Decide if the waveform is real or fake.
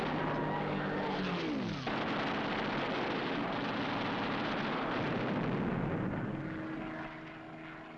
real